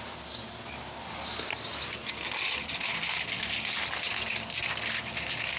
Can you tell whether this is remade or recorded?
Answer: recorded